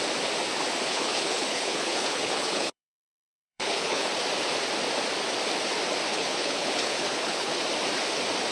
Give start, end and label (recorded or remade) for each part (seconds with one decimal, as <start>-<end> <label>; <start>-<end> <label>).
0.0-0.9 recorded; 0.9-4.1 remade; 4.1-6.1 recorded; 6.1-7.6 remade; 7.6-8.5 recorded